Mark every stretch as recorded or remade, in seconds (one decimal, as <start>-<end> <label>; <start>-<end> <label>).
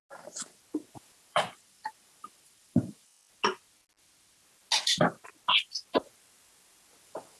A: 0.0-0.9 recorded; 0.9-3.2 remade; 3.2-7.0 recorded; 7.0-7.4 remade